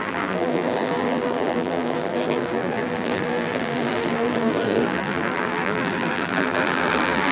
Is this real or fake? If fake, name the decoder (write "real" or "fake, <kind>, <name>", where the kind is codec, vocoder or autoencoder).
fake, vocoder, BigVGAN v2